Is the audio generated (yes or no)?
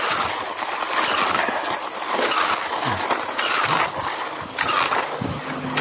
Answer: no